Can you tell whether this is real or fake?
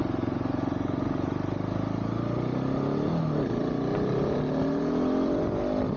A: real